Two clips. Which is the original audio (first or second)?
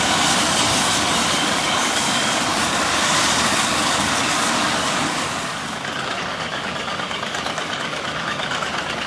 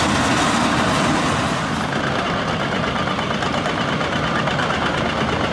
second